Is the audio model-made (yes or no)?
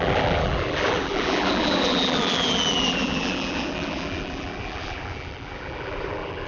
yes